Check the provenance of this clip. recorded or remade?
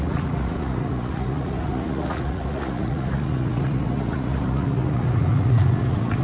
remade